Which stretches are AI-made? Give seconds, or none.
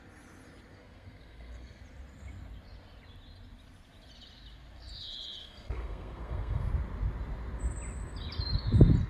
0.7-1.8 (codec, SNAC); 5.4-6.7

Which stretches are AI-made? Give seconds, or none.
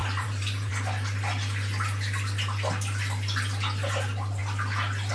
0.0-0.7 (vocoder, BigVGAN v2)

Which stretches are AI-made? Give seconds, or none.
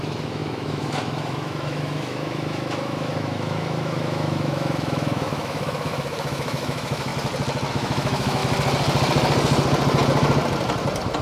0.0-7.1 (autoencoder, DAC-VAE); 7.7-8.4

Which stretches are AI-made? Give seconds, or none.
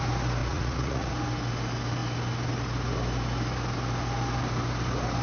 0.4-1.1 (vocoder, Vocos)